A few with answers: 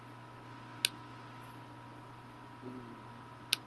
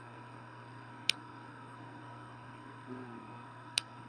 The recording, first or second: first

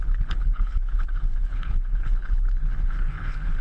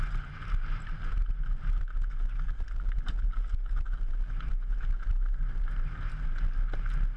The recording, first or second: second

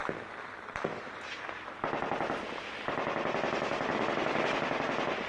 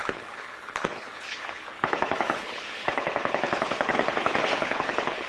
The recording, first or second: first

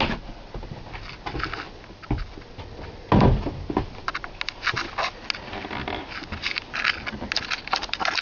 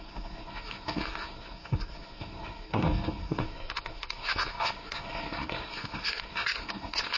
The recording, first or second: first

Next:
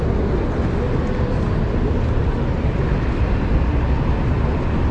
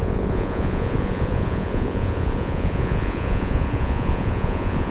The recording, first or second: first